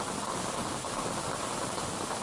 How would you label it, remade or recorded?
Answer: recorded